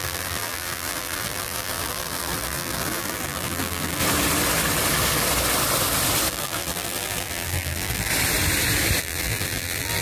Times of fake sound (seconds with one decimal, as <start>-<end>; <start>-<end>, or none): 0.0-4.0; 6.3-8.1; 9.0-10.0